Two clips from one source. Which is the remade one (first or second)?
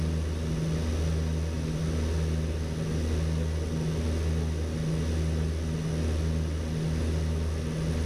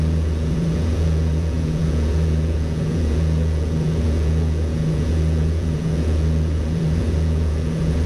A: second